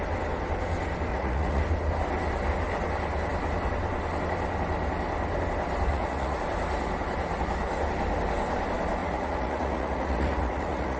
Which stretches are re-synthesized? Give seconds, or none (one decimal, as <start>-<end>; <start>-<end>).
1.1-1.6; 5.9-6.4; 9.0-11.0

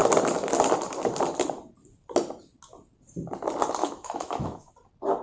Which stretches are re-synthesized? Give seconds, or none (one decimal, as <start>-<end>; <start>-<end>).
3.8-4.7

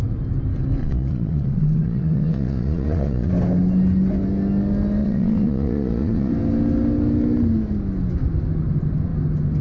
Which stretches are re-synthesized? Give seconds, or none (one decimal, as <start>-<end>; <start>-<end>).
0.8-3.3; 5.0-6.3